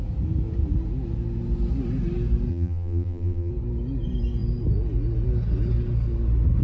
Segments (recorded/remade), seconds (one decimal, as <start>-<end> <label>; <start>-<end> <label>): 0.0-2.5 recorded; 2.5-3.5 remade; 3.5-6.6 recorded